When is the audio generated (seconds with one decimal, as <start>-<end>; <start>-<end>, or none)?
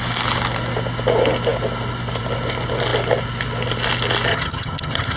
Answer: 4.3-5.2